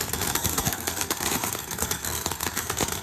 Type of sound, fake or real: fake